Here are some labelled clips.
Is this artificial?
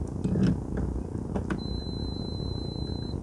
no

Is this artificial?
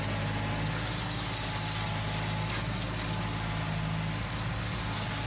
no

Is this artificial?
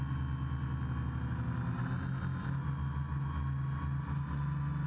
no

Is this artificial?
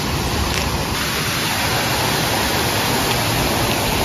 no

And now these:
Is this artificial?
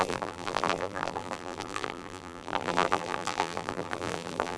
yes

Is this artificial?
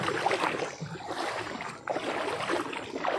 no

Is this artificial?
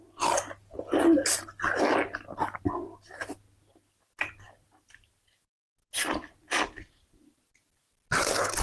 no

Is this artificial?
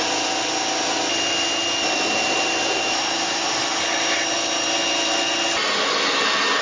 no